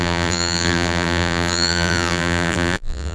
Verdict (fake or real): fake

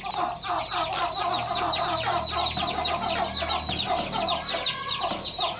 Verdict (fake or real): real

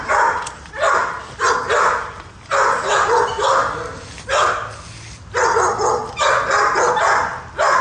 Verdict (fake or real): real